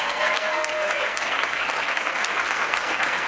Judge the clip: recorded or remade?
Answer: remade